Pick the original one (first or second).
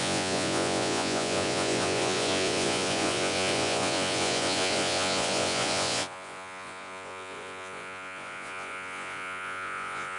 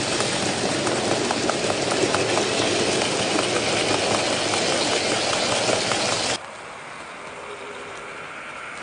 second